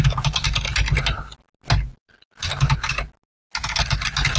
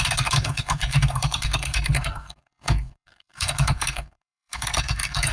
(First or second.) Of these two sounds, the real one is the first